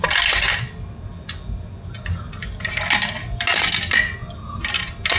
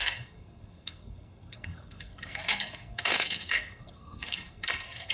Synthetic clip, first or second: second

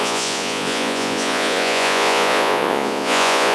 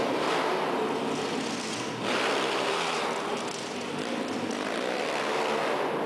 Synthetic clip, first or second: first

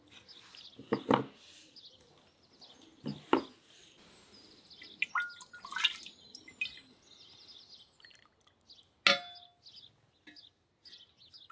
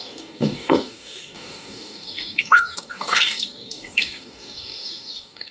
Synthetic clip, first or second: second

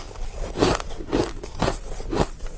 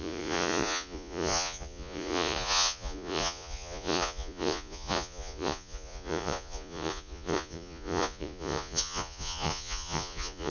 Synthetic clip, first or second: second